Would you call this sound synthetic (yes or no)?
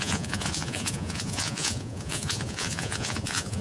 yes